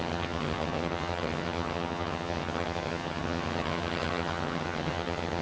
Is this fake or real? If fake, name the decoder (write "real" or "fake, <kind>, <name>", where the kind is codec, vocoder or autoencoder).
fake, vocoder, HiFi-GAN